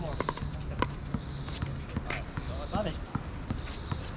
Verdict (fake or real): real